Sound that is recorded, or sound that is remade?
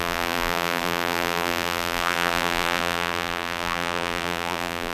remade